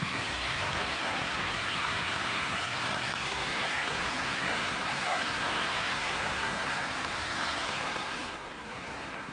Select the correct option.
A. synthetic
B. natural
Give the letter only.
A